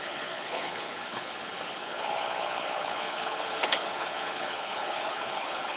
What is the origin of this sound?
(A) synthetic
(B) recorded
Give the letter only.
A